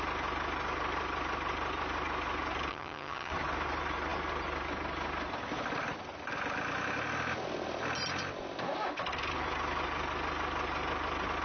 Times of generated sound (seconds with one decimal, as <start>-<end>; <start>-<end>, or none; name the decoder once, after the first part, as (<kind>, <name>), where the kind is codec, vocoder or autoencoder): 2.7-3.3 (vocoder, HiFi-GAN)